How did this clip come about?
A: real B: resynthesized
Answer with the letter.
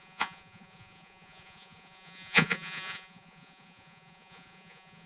B